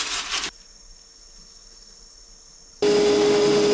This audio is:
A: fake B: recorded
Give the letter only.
B